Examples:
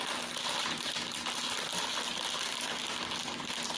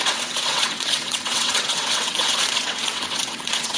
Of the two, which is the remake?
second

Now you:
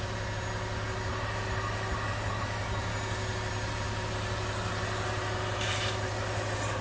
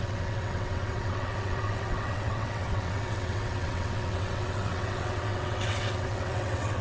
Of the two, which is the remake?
second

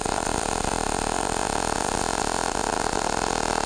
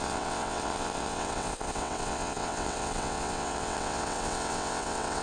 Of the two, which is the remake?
second